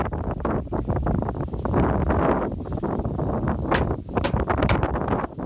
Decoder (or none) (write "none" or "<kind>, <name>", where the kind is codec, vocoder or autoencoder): none